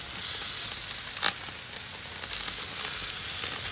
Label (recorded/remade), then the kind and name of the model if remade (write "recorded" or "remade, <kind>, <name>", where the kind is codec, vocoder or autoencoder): recorded